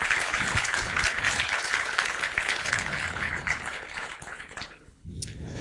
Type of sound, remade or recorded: remade